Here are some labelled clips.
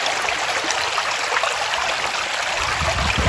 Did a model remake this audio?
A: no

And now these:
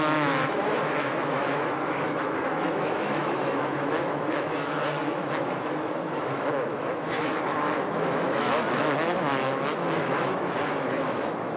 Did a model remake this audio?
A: yes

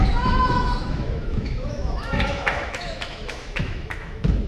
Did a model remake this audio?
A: yes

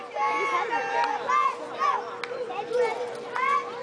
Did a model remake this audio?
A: no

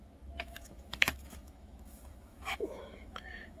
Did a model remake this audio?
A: yes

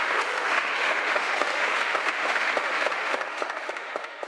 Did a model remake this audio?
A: yes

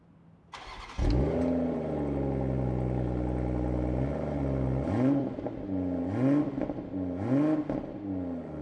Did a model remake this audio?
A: no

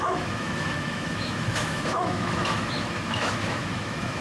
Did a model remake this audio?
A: yes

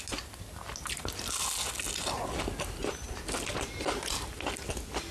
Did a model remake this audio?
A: no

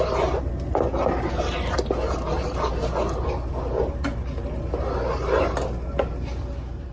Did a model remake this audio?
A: no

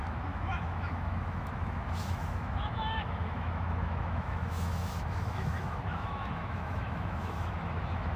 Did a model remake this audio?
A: yes